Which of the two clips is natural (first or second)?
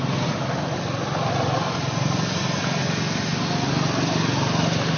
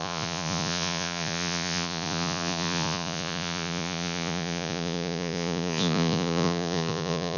first